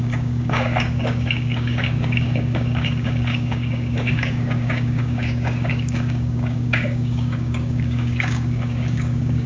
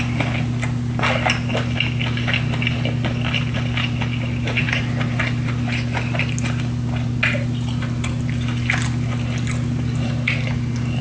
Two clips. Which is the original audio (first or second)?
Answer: second